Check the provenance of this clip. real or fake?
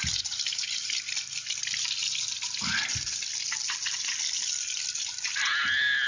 real